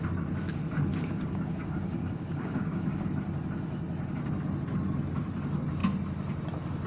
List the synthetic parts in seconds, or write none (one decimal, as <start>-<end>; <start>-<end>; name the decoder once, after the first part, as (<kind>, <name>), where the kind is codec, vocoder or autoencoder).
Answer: 0.9-3.1 (codec, DAC)